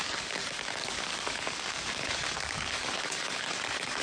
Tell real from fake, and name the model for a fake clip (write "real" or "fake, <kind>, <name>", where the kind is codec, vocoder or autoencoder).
fake, codec, DAC